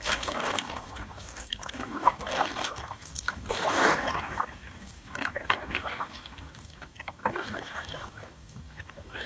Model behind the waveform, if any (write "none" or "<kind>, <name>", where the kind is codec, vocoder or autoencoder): codec, DAC